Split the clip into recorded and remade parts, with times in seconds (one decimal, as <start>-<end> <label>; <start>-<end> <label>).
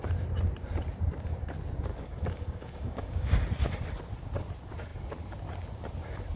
0.0-1.9 recorded; 1.9-3.4 remade; 3.4-6.4 recorded